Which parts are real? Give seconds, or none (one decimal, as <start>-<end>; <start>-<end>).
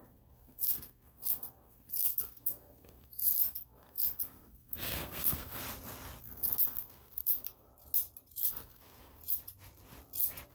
5.6-6.2; 7.7-8.5; 9.2-10.5